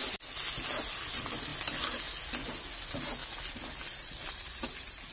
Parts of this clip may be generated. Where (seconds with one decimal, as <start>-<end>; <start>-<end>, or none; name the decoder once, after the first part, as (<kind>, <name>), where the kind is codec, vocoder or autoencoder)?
none